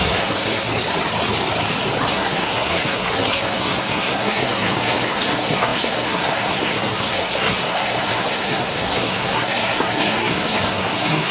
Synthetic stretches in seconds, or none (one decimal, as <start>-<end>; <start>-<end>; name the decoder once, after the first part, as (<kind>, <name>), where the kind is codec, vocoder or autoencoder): 0.0-0.7 (codec, SNAC); 2.1-11.3